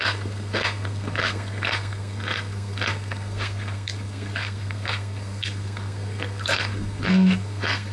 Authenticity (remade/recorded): remade